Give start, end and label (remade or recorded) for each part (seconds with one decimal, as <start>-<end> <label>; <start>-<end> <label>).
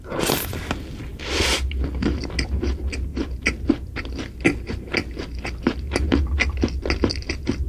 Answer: 0.0-7.7 recorded